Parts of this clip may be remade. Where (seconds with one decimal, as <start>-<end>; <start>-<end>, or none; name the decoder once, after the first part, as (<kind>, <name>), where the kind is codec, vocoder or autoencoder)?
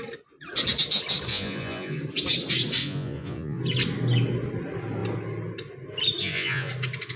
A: 1.3-2.0 (vocoder, Vocos); 2.8-3.6; 6.2-6.7